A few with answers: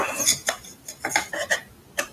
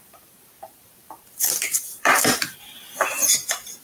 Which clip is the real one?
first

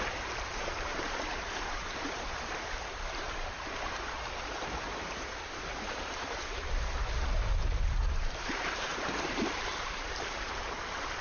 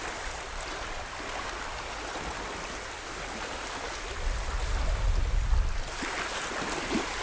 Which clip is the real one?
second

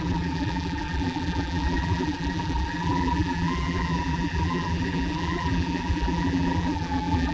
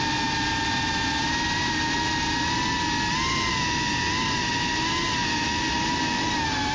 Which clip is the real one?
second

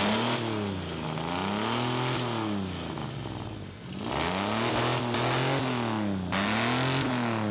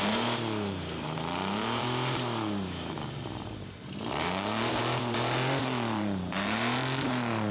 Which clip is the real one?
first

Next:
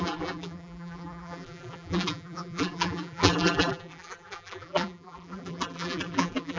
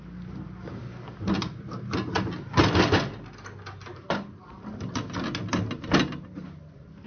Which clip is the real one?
second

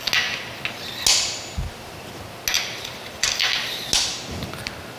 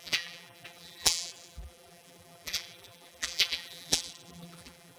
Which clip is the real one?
first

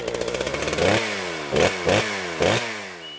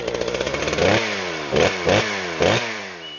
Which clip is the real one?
first